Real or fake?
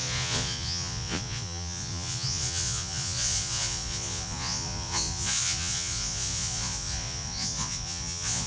fake